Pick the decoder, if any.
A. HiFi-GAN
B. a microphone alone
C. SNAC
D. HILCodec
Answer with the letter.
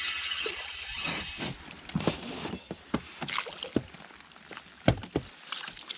B